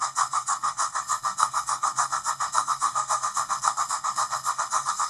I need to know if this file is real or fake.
fake